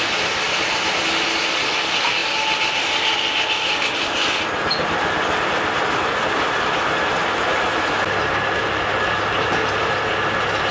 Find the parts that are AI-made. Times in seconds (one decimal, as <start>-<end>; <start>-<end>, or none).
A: none

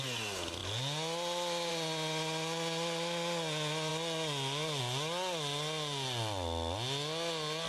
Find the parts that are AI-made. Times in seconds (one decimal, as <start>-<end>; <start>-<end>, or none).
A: none